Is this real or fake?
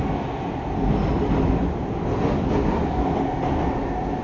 real